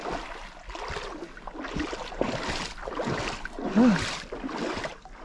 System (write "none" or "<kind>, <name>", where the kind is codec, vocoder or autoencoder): none